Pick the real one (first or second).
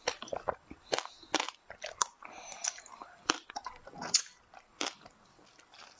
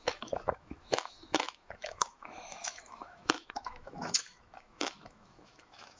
first